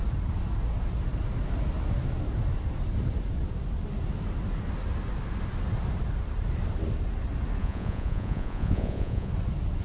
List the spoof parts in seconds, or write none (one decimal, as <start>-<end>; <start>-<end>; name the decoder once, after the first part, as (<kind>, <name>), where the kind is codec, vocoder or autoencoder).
7.6-9.3 (vocoder, Vocos)